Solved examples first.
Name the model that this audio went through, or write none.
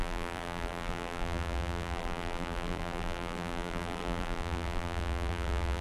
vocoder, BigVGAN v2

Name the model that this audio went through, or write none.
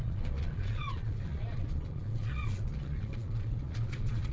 vocoder, Vocos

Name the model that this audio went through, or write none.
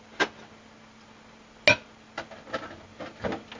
none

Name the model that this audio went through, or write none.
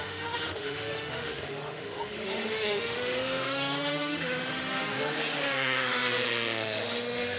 autoencoder, DAC-VAE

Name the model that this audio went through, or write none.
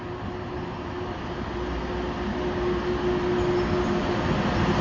none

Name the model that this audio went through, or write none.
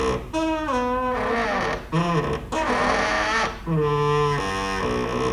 none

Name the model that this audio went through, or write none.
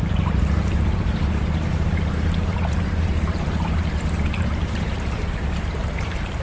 vocoder, BigVGAN v2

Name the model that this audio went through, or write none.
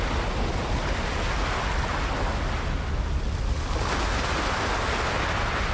none